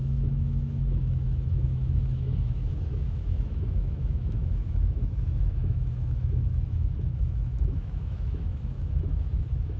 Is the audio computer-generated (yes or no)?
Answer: yes